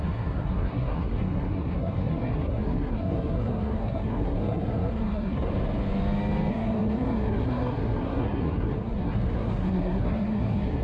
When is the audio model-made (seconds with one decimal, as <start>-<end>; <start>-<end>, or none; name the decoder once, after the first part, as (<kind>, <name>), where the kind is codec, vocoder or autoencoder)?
0.0-5.5 (codec, SNAC); 6.5-10.8